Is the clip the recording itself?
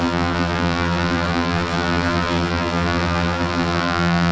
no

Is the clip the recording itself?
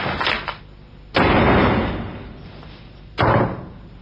yes